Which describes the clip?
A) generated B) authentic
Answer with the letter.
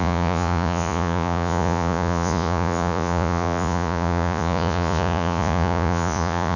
A